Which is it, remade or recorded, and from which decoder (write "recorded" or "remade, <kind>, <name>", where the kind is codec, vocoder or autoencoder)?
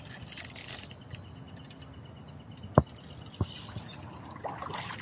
recorded